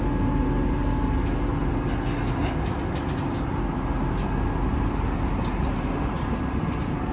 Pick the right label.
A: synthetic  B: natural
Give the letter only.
B